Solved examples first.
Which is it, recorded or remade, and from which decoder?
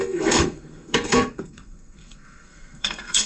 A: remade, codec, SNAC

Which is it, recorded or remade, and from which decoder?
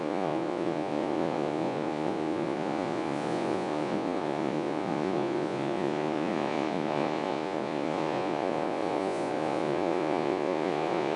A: remade, vocoder, Vocos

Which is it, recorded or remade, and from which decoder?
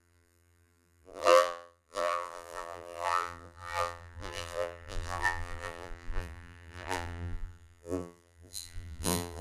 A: remade, vocoder, BigVGAN v2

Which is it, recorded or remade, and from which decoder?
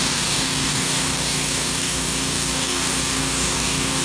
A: remade, codec, DAC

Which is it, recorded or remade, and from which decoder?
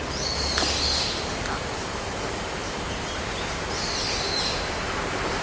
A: recorded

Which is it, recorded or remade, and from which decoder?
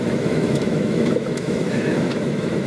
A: remade, autoencoder, DAC-VAE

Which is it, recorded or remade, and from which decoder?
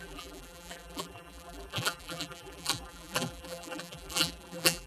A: remade, vocoder, BigVGAN v2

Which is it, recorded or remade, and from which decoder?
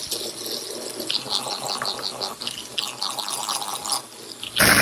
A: recorded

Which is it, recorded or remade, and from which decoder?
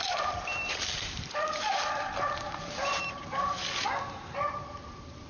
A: remade, vocoder, BigVGAN v2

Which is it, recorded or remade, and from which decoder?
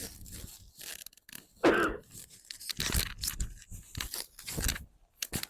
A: recorded